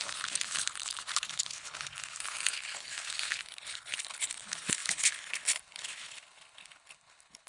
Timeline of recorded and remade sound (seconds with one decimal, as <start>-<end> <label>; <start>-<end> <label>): 0.0-7.5 remade

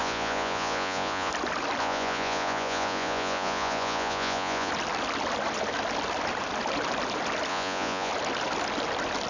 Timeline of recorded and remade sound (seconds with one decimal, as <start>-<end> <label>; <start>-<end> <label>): 0.0-1.3 remade; 1.3-1.8 recorded; 1.8-4.7 remade; 4.7-7.5 recorded; 7.5-8.1 remade; 8.1-9.3 recorded

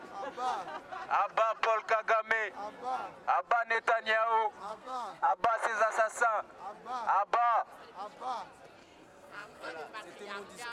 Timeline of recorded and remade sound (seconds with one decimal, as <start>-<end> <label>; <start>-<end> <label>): 0.0-4.6 recorded; 4.6-5.4 remade; 5.4-8.8 recorded; 8.8-9.7 remade; 9.7-10.7 recorded

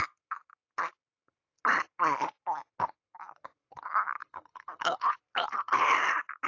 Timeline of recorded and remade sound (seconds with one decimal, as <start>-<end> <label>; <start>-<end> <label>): 0.0-4.2 recorded; 4.2-5.2 remade; 5.2-6.5 recorded

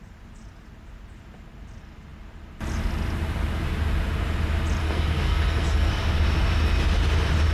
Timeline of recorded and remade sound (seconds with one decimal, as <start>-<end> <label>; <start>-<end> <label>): 0.0-4.8 recorded; 4.8-5.9 remade; 5.9-7.5 recorded